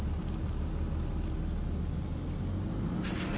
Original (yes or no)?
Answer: yes